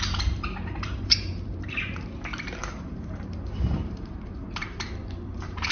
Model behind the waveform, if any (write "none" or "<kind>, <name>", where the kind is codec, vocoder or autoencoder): vocoder, BigVGAN v2